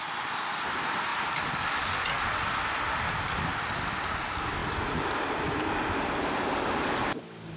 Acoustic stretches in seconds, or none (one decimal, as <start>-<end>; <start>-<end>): 0.0-4.6; 6.7-7.6